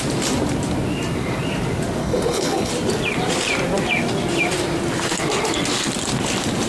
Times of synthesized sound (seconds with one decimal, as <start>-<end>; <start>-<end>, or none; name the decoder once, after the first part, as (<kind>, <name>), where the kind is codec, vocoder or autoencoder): 2.0-2.7 (codec, HILCodec)